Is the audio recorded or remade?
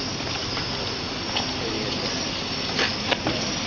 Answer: recorded